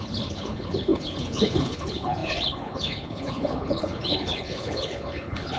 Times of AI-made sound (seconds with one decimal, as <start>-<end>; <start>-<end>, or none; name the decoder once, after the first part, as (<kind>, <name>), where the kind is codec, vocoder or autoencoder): 0.0-5.6 (codec, HILCodec)

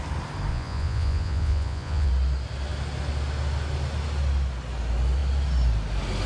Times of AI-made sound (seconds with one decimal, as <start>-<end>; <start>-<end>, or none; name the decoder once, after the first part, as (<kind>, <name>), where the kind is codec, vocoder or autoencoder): 0.5-2.1 (vocoder, Vocos)

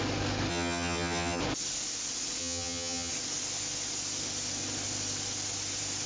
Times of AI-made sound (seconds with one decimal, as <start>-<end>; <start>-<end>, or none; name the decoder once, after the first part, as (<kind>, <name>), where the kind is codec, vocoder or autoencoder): 0.5-1.4 (vocoder, HiFi-GAN); 2.4-3.1

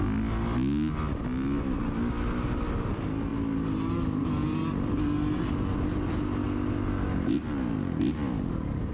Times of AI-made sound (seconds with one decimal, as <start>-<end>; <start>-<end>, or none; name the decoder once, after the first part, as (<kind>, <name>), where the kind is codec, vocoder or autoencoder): none

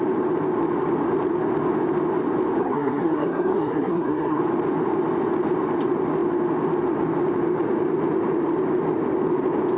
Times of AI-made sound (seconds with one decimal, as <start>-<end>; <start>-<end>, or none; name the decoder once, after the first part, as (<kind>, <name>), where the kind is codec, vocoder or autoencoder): 2.6-4.4 (codec, SNAC)

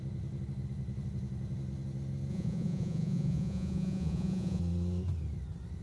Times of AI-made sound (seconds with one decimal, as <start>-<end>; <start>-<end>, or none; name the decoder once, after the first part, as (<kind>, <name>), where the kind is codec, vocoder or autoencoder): 2.3-4.6 (vocoder, Vocos)

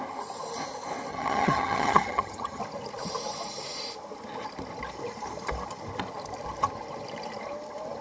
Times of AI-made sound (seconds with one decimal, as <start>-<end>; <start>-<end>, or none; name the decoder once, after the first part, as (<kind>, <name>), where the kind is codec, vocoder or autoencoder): 1.1-2.6 (vocoder, HiFi-GAN)

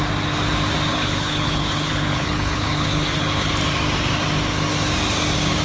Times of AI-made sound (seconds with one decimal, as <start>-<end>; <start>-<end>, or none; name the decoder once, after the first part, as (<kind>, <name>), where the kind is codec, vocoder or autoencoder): 0.9-3.5 (codec, HILCodec)